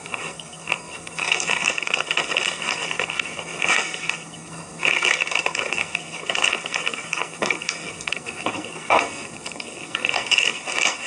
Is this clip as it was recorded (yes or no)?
no